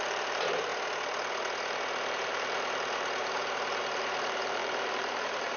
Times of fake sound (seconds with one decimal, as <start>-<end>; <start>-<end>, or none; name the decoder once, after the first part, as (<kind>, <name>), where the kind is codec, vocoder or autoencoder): 0.0-0.7 (vocoder, BigVGAN v2); 2.1-5.6